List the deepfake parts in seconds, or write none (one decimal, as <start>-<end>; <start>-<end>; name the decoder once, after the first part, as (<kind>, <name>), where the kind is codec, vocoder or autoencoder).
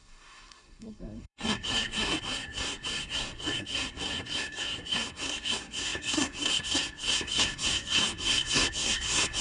0.0-9.4 (codec, SNAC)